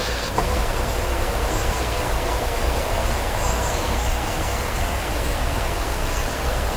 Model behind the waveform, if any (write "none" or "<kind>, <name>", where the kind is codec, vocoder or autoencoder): codec, SNAC